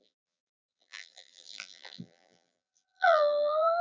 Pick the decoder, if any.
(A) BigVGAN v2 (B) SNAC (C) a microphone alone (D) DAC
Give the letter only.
A